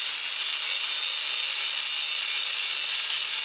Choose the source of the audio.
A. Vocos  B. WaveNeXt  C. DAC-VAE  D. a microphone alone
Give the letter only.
D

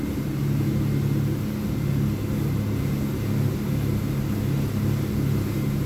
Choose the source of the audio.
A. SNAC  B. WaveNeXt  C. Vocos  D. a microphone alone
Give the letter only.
D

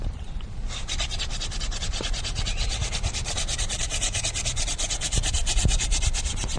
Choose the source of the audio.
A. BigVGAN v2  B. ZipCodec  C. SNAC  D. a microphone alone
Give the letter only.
A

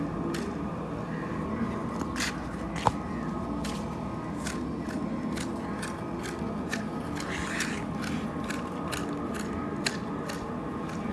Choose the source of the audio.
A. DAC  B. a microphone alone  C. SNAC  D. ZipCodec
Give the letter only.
B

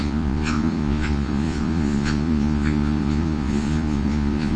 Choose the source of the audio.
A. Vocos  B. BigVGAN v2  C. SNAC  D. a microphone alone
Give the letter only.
A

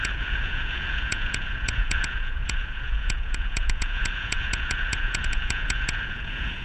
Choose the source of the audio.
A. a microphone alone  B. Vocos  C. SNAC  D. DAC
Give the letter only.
B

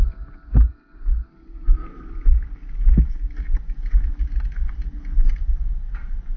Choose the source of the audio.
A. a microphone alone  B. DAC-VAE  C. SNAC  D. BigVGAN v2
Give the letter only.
A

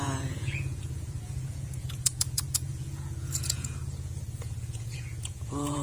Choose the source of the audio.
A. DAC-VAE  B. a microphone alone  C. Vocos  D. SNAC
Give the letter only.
C